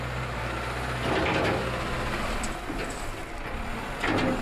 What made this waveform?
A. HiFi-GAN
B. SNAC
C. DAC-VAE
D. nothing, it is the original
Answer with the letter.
D